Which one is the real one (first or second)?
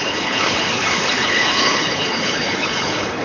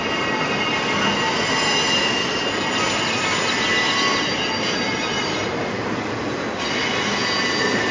second